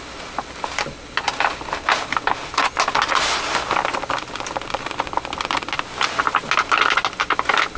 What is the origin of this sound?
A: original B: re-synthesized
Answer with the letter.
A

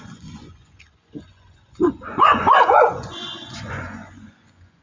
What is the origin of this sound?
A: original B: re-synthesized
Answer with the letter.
B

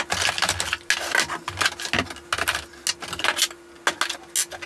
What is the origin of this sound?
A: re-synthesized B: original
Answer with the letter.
B